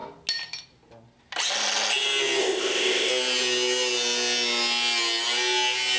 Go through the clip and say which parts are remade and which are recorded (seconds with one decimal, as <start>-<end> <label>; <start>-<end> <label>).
0.0-2.4 recorded; 2.4-3.1 remade; 3.1-6.0 recorded